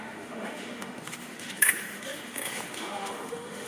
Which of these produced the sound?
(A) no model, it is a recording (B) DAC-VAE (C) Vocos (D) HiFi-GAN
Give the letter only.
B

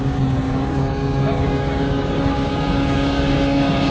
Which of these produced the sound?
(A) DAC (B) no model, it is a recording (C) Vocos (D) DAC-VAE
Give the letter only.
A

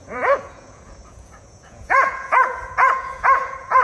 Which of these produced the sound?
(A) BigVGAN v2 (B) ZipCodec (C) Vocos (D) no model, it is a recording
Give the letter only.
C